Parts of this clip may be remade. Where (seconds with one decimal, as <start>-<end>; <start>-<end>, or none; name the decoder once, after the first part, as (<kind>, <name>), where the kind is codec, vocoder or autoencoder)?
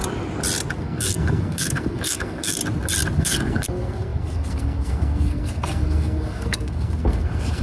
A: 0.8-2.6 (codec, SNAC); 3.2-7.6